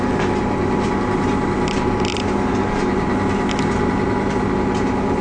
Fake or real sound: real